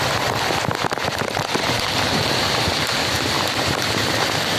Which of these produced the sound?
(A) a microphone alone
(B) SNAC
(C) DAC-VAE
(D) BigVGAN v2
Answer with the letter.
A